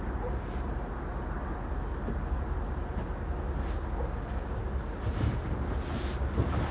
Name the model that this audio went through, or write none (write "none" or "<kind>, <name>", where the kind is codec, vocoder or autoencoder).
none